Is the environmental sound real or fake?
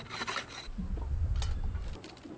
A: real